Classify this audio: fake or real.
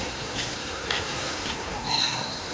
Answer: fake